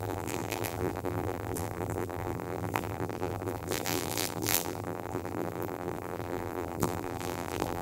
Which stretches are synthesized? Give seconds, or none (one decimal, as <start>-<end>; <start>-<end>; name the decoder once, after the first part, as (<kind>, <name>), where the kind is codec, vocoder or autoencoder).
0.0-7.8 (vocoder, BigVGAN v2)